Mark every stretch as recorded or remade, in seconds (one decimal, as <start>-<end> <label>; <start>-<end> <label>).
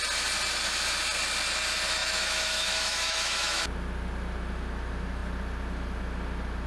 0.0-2.0 recorded; 2.0-3.6 remade; 3.6-6.7 recorded